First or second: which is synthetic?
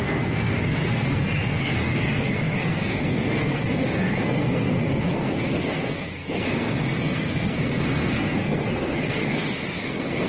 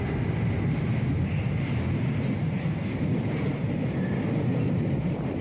first